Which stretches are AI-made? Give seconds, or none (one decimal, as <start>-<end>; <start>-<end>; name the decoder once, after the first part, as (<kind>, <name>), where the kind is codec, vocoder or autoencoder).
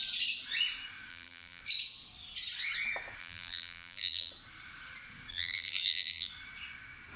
1.1-1.6 (vocoder, BigVGAN v2); 3.2-4.3; 5.3-6.3